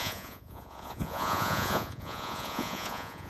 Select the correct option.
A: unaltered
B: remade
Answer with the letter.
B